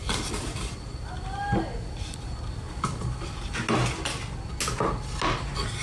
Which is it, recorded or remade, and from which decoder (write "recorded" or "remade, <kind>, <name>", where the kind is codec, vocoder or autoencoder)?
recorded